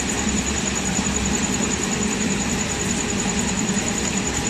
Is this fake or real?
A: fake